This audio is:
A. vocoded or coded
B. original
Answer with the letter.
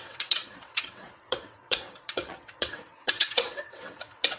A